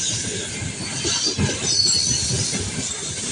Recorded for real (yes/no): yes